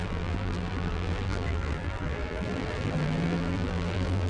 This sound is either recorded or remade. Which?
remade